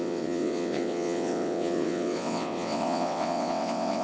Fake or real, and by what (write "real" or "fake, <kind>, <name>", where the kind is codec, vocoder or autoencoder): fake, vocoder, WaveNeXt